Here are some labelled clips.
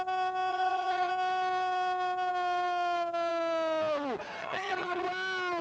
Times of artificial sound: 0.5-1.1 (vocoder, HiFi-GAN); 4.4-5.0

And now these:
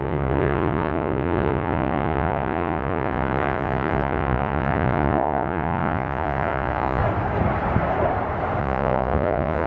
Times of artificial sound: 0.0-7.0 (vocoder, Vocos); 8.6-9.7

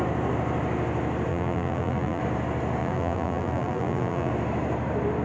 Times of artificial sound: 1.3-2.2 (vocoder, BigVGAN v2); 2.8-4.3

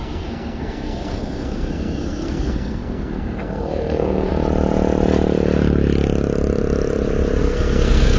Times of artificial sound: 0.0-4.3 (codec, SNAC); 7.4-8.2

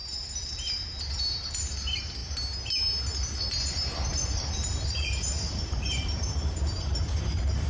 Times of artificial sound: 0.0-2.2 (vocoder, BigVGAN v2); 3.5-7.7

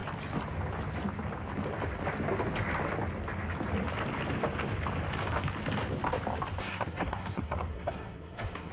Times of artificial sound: 6.6-8.7 (codec, SNAC)